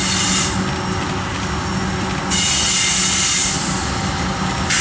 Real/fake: real